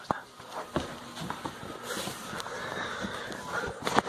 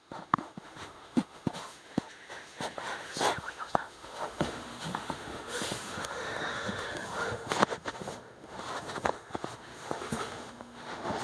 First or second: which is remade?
second